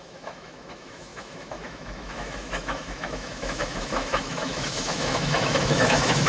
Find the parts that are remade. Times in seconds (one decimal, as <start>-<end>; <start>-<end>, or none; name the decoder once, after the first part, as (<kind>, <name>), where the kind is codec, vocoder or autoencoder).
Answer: 0.0-6.3 (autoencoder, DAC-VAE)